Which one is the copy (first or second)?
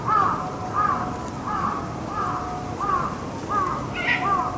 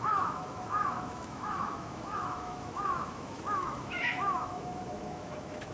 second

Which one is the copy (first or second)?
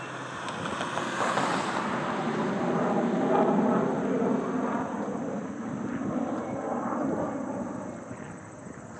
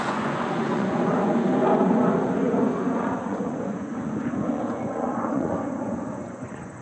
second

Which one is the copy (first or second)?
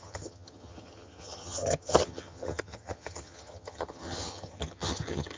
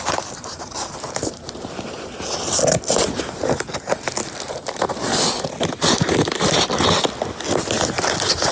first